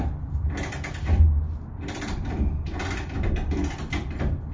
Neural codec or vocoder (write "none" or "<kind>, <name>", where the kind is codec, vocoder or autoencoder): none